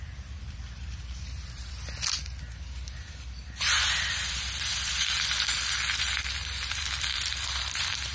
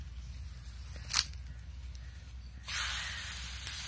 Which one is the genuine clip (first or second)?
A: second